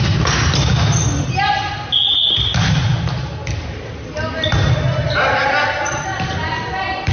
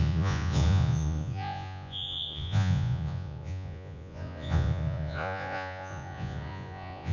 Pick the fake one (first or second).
second